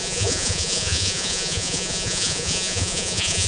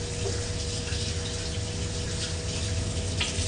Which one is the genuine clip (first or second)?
second